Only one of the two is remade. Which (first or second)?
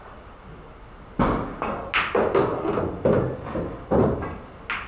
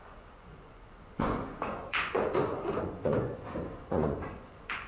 second